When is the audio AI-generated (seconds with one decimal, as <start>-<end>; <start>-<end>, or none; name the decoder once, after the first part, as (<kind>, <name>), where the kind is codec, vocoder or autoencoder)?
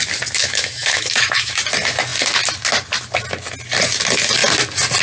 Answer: 0.4-1.6 (autoencoder, DAC-VAE)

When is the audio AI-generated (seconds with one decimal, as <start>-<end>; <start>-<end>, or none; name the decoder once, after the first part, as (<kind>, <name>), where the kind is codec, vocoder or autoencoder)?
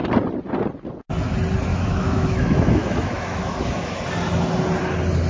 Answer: 1.7-4.0 (autoencoder, DAC-VAE)